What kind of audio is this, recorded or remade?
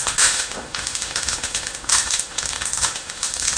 remade